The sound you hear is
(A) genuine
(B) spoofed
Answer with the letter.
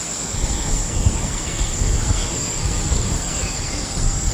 B